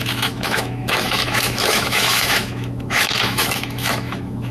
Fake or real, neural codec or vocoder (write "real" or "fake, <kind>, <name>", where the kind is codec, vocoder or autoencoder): fake, autoencoder, DAC-VAE